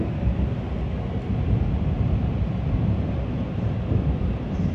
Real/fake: real